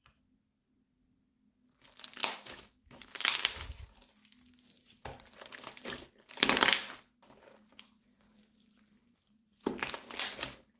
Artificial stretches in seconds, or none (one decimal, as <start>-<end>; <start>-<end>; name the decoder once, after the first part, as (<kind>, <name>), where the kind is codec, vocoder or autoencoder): 2.2-3.0 (autoencoder, DAC-VAE)